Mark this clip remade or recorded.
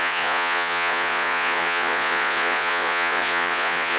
remade